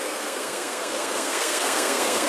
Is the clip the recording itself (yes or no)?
no